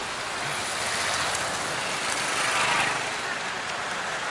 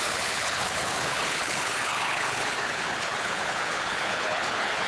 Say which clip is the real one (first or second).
first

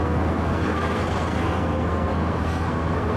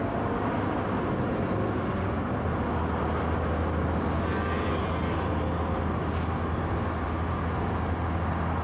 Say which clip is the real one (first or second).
second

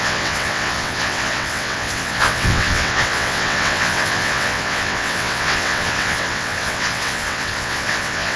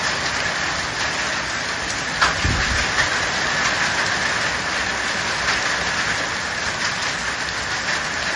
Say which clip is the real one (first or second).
second